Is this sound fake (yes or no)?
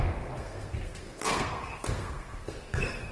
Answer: yes